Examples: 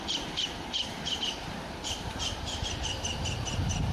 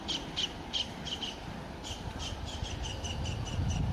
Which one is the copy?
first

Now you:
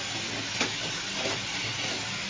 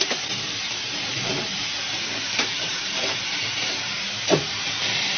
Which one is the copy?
second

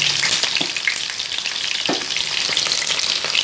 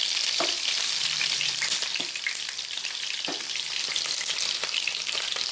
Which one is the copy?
second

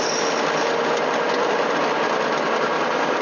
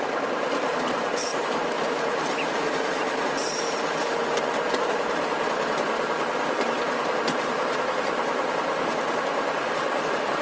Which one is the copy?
second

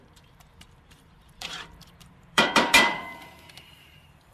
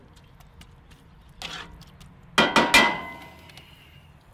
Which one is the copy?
first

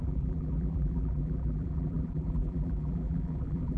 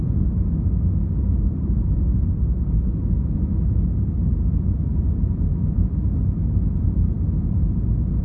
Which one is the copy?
first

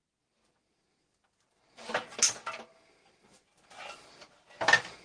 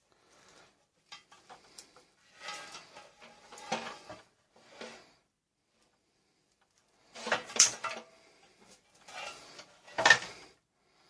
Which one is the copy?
second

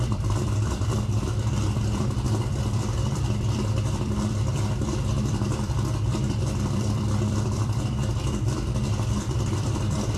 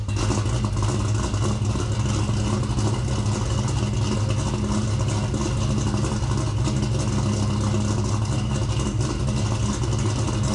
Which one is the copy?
first